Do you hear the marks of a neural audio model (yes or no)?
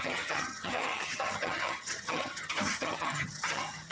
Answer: yes